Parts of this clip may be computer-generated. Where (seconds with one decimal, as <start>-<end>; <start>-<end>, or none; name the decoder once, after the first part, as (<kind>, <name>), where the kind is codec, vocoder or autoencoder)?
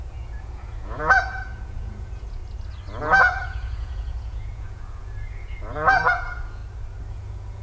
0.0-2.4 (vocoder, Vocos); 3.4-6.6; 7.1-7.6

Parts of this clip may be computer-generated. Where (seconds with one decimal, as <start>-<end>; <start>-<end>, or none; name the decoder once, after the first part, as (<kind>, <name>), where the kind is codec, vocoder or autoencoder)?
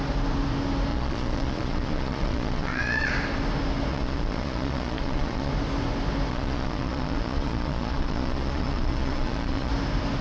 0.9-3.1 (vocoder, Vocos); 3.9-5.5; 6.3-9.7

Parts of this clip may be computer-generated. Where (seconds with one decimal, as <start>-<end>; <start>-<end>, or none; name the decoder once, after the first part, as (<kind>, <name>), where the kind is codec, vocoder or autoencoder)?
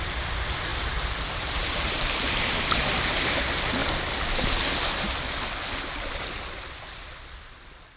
0.7-2.4 (vocoder, BigVGAN v2)